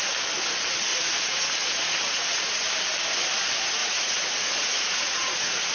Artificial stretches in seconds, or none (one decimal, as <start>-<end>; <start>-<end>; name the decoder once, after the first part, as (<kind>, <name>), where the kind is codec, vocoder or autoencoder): 0.9-2.7 (vocoder, Vocos); 3.8-5.7